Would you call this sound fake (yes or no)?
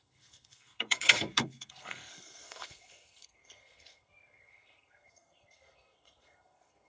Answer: yes